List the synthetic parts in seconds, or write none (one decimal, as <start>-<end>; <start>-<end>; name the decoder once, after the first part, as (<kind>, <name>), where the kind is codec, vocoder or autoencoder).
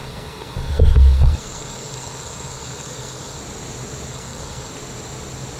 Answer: 0.0-3.4 (codec, SNAC); 4.1-4.7